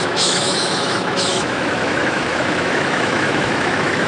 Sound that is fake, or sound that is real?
fake